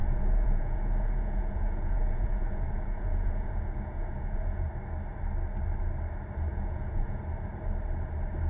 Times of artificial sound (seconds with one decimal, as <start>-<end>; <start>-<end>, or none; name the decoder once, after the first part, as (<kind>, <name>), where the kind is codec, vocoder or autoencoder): 0.0-4.7 (vocoder, Vocos); 6.5-7.2